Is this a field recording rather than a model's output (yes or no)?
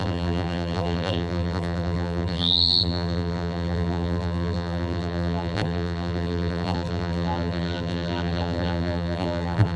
no